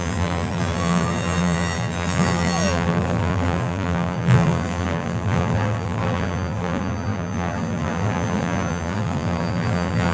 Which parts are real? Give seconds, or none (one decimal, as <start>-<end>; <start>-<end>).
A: none